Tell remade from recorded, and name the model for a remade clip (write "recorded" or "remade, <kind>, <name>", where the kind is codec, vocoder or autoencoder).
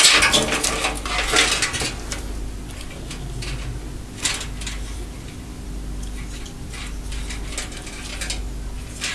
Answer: recorded